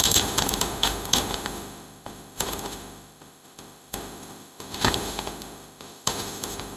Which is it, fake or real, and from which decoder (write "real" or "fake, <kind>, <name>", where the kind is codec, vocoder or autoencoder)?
fake, autoencoder, DAC-VAE